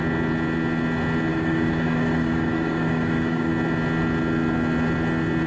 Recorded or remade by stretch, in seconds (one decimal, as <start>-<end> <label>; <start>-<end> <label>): 0.0-1.3 recorded; 1.3-3.5 remade; 3.5-5.5 recorded

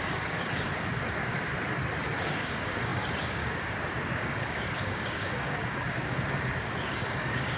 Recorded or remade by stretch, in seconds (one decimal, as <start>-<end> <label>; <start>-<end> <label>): 0.0-1.5 remade; 1.5-2.3 recorded; 2.3-7.6 remade

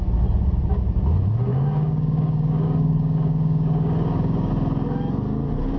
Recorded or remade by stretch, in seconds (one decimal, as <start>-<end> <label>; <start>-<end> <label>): 0.0-1.5 recorded; 1.5-4.5 remade; 4.5-5.8 recorded

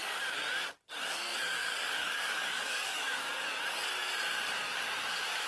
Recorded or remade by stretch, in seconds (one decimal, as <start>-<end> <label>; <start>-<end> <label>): 0.0-1.6 recorded; 1.6-3.5 remade; 3.5-5.5 recorded